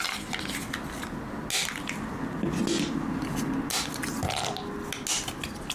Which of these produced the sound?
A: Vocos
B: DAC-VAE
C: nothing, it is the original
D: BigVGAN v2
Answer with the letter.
C